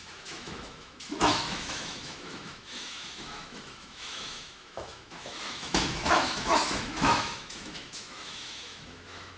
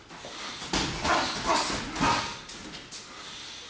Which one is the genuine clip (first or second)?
second